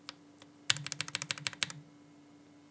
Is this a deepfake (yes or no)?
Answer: no